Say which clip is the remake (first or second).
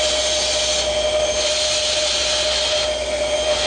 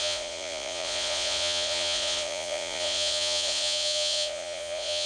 second